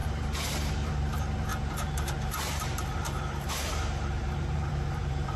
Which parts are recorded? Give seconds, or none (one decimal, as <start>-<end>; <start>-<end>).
none